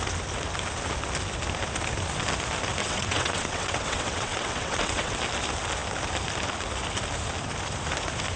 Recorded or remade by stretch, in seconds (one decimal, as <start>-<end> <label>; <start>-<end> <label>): 0.0-2.8 recorded; 2.8-5.2 remade; 5.2-8.4 recorded